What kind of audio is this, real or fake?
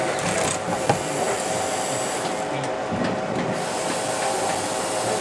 real